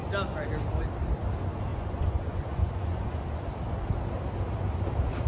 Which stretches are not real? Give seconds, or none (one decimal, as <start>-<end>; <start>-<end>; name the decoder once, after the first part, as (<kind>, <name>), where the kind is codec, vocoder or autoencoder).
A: 1.7-3.5 (vocoder, Vocos)